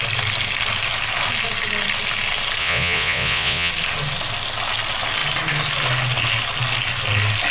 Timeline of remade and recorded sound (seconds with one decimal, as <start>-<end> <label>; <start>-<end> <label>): 0.0-2.6 recorded; 2.6-3.7 remade; 3.7-7.5 recorded